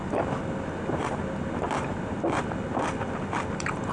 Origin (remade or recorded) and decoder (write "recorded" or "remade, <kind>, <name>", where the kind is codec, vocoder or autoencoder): remade, vocoder, BigVGAN v2